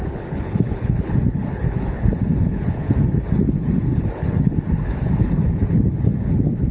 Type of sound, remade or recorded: remade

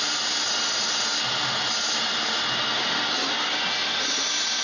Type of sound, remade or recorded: recorded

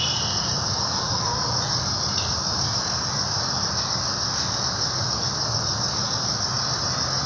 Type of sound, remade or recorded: recorded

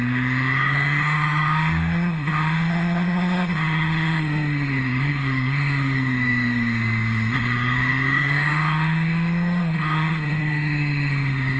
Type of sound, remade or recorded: remade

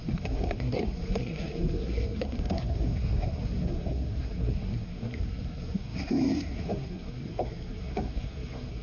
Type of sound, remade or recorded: remade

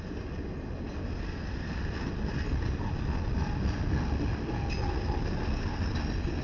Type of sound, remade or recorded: recorded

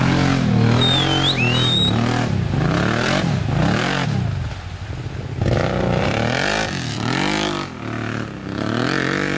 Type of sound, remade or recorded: recorded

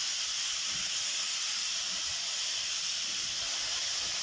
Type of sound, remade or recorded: recorded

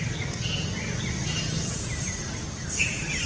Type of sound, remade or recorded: recorded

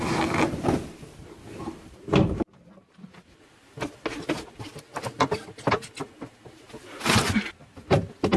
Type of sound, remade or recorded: recorded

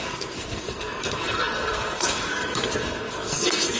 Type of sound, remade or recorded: remade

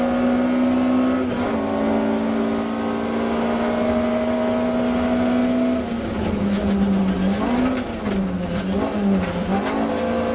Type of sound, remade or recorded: recorded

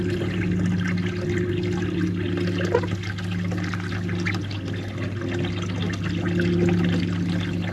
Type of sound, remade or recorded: recorded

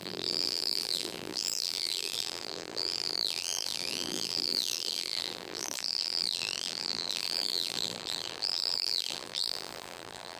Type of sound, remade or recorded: remade